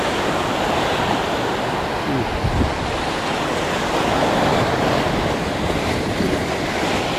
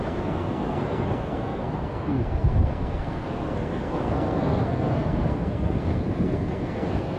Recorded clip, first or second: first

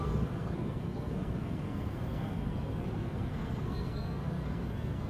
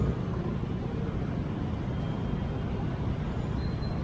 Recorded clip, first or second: second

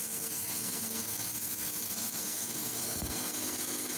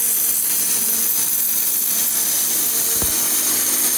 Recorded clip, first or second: second